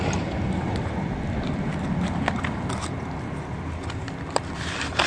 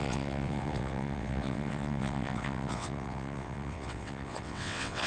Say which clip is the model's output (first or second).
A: second